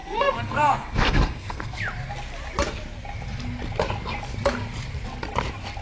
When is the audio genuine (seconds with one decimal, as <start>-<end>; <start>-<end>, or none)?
1.8-5.8